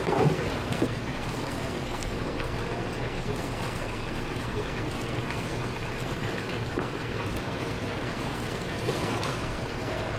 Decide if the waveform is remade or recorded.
remade